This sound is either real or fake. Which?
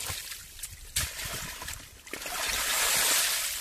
real